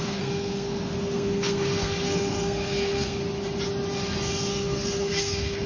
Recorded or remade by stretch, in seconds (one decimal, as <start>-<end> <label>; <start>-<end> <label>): 0.0-3.2 remade; 3.2-4.5 recorded; 4.5-5.7 remade